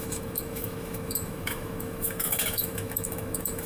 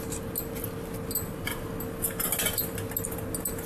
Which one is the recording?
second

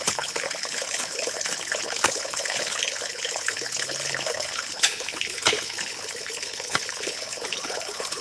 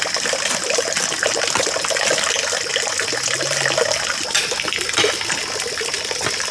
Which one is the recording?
second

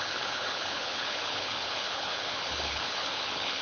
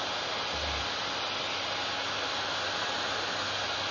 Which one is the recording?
second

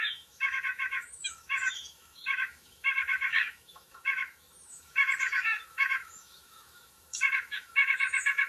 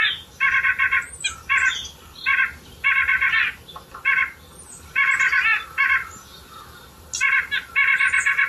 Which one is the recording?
second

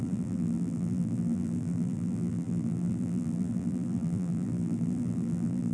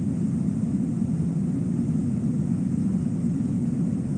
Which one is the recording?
second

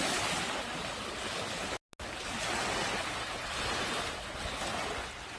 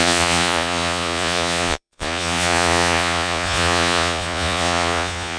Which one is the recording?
first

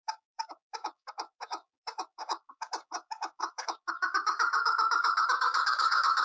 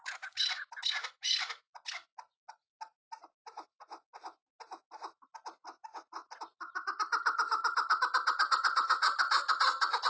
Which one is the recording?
second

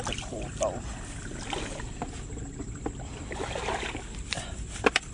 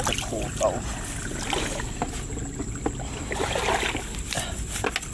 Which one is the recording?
second